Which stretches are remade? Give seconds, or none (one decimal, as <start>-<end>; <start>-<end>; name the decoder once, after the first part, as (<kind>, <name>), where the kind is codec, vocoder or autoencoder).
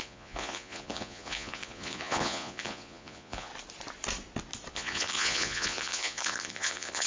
0.0-3.5 (vocoder, Vocos); 4.7-7.1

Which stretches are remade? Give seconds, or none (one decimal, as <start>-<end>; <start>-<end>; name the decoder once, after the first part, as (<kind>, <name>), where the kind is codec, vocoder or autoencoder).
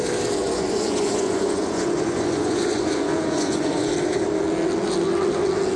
0.4-3.9 (vocoder, Vocos)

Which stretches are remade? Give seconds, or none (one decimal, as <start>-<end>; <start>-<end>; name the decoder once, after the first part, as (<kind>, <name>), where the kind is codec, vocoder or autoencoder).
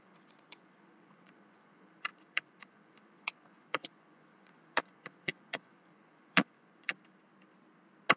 0.0-6.9 (vocoder, Vocos)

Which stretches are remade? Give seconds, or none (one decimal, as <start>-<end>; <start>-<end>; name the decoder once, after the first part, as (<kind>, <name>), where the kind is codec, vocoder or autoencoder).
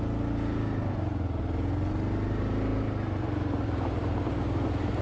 none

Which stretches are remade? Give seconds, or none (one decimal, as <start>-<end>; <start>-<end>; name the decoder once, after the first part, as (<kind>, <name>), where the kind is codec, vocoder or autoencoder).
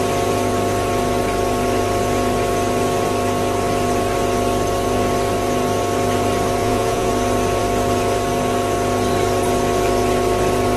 6.6-7.1 (vocoder, Vocos)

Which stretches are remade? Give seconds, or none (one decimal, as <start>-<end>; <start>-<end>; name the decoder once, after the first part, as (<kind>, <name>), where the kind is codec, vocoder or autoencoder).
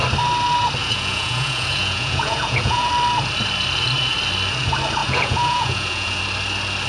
0.8-2.9 (vocoder, Vocos); 5.0-6.2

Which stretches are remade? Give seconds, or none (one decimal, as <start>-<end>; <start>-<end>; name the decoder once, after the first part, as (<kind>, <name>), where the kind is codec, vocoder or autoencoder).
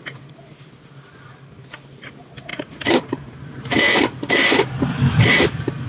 none